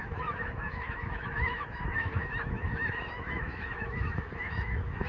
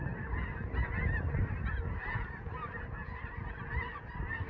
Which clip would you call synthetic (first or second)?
first